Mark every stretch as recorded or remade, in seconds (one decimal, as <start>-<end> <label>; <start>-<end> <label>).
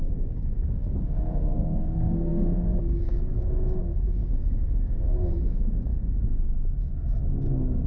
0.0-5.9 remade; 5.9-7.9 recorded